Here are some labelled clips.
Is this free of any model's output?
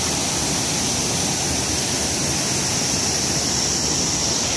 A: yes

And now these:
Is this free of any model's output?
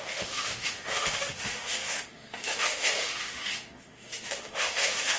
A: no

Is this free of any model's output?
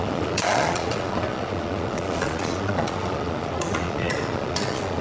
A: no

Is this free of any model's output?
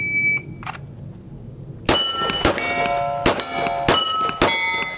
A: yes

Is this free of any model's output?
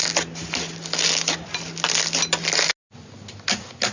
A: yes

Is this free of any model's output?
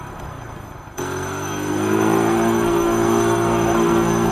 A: no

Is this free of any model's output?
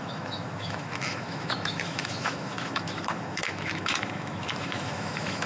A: no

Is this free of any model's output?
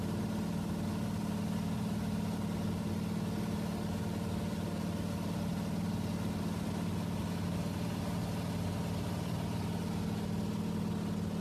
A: yes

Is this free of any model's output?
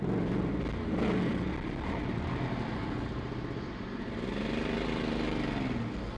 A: yes